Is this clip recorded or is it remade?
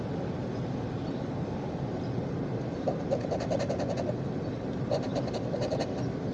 recorded